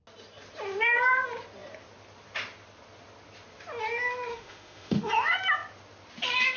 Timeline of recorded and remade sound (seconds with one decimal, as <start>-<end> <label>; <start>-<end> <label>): 0.0-4.3 recorded; 4.3-5.1 remade; 5.1-6.6 recorded